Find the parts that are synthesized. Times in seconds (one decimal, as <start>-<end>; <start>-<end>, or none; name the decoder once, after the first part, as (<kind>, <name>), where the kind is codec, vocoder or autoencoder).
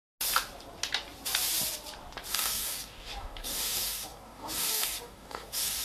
2.3-5.8 (codec, DAC)